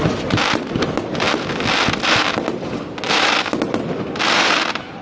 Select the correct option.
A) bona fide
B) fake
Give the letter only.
A